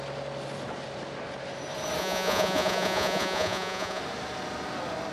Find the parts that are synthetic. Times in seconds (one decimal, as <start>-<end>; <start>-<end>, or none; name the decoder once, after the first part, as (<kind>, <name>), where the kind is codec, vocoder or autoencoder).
2.0-4.0 (vocoder, Vocos)